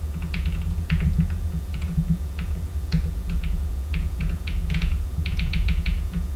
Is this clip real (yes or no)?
no